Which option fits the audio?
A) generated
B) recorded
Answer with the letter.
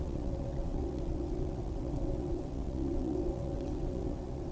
A